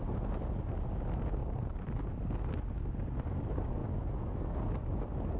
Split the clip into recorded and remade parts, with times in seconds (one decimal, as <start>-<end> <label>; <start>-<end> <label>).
0.0-1.4 recorded; 1.4-2.1 remade; 2.1-5.4 recorded